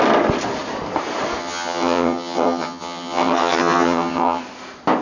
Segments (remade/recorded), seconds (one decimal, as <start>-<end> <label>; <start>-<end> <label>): 0.0-1.4 recorded; 1.4-4.4 remade; 4.4-5.0 recorded